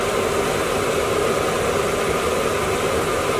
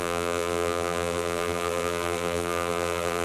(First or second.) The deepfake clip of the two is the second